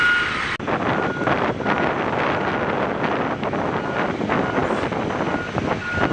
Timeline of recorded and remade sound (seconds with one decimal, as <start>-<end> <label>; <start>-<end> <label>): 0.0-6.1 recorded